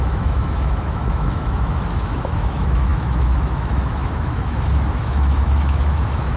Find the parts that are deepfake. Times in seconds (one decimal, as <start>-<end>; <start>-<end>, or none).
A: 0.0-6.4